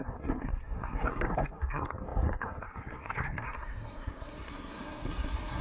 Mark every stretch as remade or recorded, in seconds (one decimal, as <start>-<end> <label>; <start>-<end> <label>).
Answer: 0.0-5.6 remade